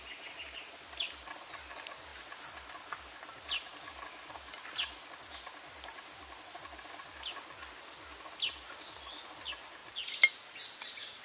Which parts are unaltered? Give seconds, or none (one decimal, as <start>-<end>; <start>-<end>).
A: 0.0-11.2